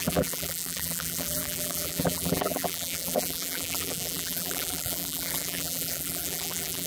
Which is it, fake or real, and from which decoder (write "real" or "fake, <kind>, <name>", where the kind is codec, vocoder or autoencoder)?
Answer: fake, vocoder, BigVGAN v2